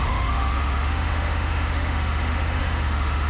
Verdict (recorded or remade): remade